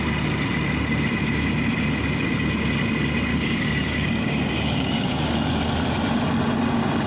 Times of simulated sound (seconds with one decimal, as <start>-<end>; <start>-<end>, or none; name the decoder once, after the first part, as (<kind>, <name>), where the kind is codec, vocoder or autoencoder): 3.3-5.6 (codec, DAC)